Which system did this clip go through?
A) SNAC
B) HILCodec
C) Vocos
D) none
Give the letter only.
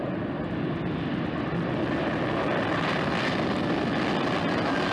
D